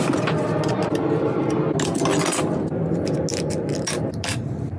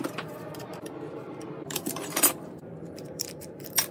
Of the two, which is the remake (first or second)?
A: second